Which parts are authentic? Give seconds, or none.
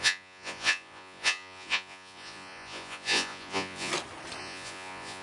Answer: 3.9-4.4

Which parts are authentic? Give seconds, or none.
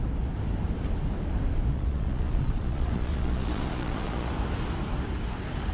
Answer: 0.0-1.7; 4.3-5.7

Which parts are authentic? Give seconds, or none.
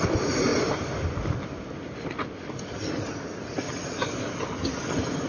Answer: 0.0-5.3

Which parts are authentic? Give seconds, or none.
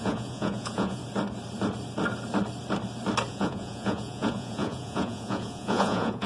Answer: 1.0-3.3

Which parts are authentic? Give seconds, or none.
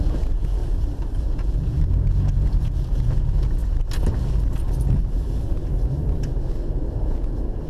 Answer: 0.6-1.2; 3.6-7.0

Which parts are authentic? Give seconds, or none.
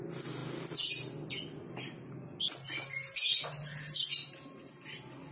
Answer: 0.0-5.3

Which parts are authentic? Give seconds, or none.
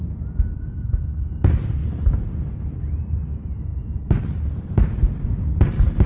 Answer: 0.0-0.5; 1.3-6.1